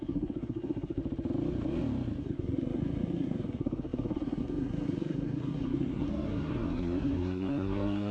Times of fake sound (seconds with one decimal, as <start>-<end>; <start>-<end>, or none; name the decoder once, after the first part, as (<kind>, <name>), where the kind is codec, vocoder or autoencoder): 0.0-1.0 (codec, SNAC); 2.2-8.1